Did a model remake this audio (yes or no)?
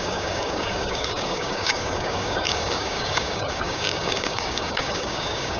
yes